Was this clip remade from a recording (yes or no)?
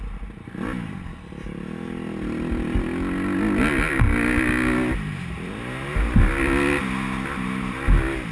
no